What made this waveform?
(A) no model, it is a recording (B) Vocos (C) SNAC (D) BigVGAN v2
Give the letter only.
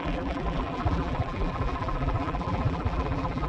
D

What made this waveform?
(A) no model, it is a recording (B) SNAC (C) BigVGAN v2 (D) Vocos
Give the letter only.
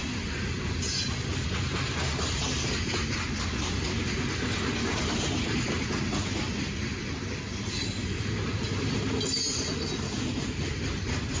A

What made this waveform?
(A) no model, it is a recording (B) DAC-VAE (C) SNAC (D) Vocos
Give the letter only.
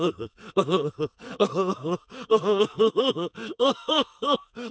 C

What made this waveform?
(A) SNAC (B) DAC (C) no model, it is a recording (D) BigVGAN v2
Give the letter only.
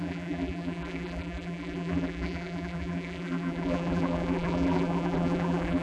D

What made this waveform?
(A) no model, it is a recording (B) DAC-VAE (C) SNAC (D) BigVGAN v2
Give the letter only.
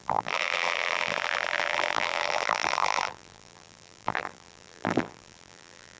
D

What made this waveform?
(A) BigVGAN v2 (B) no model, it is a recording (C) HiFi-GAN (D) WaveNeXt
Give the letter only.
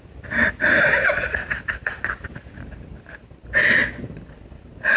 A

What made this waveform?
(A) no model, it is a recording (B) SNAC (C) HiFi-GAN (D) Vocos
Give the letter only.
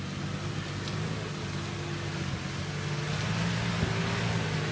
A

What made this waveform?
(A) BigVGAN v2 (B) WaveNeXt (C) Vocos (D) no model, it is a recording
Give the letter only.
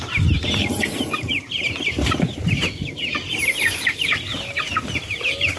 A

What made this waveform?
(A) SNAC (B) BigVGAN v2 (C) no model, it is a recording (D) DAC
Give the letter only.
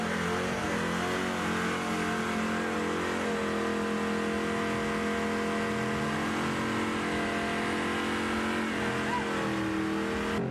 C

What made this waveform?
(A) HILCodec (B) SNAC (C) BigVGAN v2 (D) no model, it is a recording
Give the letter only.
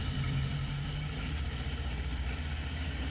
D